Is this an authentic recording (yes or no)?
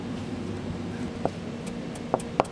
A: yes